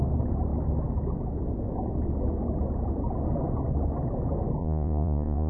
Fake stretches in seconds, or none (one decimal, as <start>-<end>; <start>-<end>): 4.6-5.5